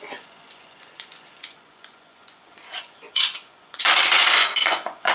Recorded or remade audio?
remade